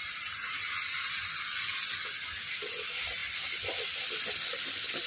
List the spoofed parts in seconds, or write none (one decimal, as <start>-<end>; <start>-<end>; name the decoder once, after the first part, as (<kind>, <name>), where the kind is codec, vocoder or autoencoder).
0.0-0.7 (vocoder, BigVGAN v2); 3.2-3.8